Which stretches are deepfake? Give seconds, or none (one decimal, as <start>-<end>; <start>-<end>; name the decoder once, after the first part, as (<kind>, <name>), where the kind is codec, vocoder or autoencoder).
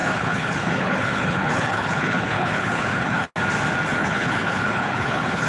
0.0-3.3 (codec, HILCodec); 4.0-5.5